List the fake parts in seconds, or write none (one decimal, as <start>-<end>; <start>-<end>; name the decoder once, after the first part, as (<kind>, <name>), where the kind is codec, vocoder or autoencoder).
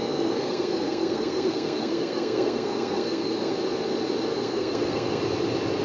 0.0-3.5 (codec, SNAC); 4.3-5.2